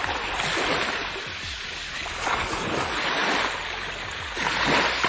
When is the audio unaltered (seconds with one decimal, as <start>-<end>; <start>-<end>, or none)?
0.0-3.2; 4.2-5.1